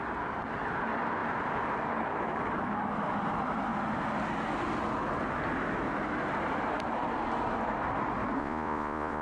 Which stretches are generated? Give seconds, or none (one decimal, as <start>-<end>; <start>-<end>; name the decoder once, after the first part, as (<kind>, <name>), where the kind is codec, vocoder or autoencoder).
8.4-9.2 (vocoder, Vocos)